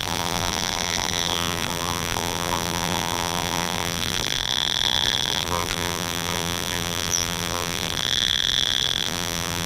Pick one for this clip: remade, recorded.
remade